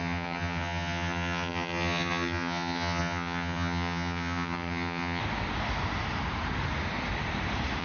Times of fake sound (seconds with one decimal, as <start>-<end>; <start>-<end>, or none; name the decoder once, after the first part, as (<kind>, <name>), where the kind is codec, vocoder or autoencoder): 0.0-5.2 (vocoder, HiFi-GAN)

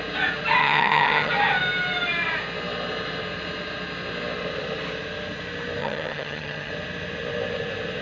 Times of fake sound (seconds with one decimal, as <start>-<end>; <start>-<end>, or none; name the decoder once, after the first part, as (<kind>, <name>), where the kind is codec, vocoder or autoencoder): 0.6-1.3 (vocoder, HiFi-GAN); 5.8-6.7